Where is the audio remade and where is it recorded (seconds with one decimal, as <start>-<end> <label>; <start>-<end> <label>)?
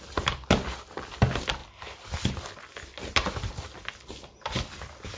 0.0-5.2 recorded